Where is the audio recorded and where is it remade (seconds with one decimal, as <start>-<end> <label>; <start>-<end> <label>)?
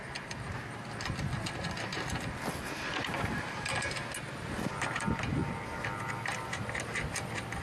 0.0-7.6 recorded